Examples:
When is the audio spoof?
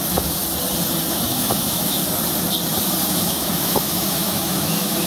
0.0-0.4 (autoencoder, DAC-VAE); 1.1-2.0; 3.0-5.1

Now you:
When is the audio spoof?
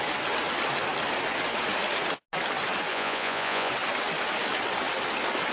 2.9-3.7 (vocoder, Vocos)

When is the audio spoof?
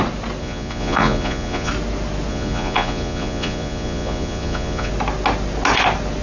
0.4-1.7 (vocoder, Vocos); 2.3-4.9